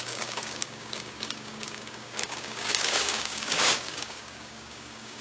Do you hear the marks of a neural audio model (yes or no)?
yes